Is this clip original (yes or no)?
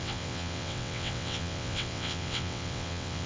no